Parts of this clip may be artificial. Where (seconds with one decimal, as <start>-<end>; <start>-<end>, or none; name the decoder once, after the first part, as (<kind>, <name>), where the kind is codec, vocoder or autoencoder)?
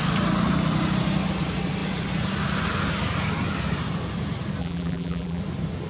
4.6-5.4 (vocoder, BigVGAN v2)